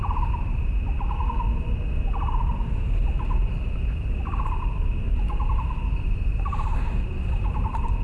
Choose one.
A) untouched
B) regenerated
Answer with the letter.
A